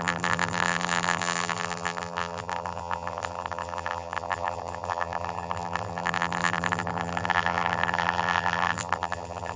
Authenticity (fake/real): fake